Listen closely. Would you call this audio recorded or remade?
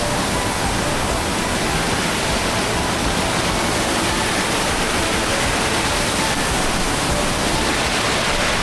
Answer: recorded